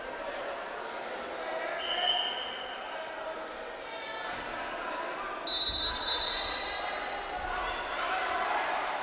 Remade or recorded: recorded